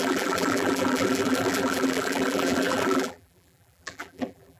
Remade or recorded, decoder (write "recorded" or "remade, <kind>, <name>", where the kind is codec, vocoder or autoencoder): remade, vocoder, BigVGAN v2